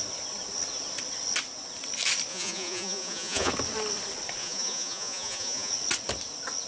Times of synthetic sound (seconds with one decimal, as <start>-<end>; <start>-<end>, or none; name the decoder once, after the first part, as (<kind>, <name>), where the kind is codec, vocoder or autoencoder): 2.3-3.5 (vocoder, Vocos); 4.4-5.7